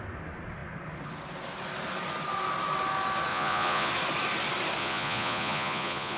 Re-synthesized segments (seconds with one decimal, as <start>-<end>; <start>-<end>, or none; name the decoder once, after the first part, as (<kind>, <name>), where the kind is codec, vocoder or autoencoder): 3.3-3.9 (vocoder, Vocos); 4.8-6.2